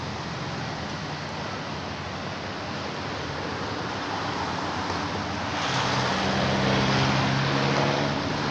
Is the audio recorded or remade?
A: recorded